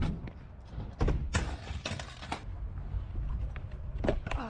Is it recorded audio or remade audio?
recorded